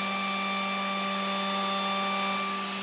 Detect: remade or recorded recorded